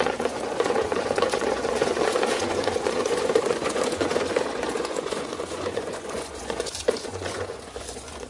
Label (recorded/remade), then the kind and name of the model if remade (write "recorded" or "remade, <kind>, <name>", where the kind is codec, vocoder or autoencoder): remade, vocoder, Vocos